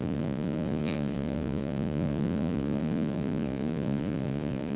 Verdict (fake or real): fake